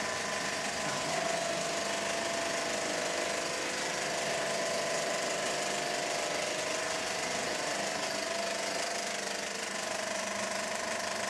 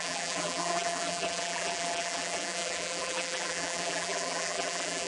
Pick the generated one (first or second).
second